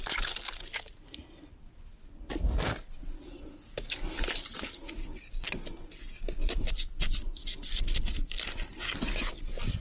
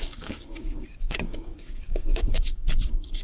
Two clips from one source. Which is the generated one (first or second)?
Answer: second